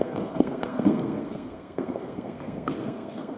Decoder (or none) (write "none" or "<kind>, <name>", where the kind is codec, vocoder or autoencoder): codec, SNAC